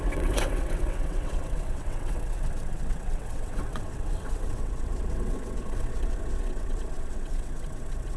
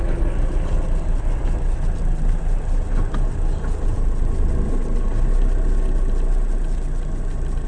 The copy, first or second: first